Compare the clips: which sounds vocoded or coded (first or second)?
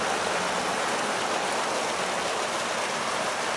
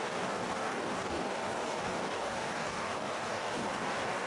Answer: second